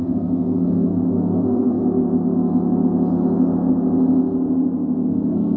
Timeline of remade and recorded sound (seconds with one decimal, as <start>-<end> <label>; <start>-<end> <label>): 0.0-1.8 remade; 1.8-5.1 recorded; 5.1-5.6 remade

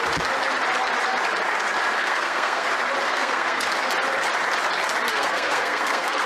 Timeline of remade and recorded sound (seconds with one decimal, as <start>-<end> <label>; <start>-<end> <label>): 0.0-2.0 recorded; 2.0-2.7 remade; 2.7-3.1 recorded; 3.1-3.7 remade; 3.7-5.1 recorded; 5.1-6.3 remade